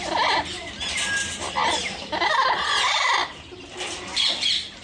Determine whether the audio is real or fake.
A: real